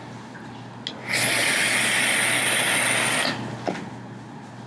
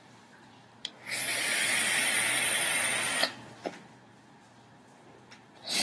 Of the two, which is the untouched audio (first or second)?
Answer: first